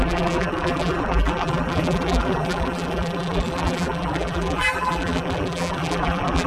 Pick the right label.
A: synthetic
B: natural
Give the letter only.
A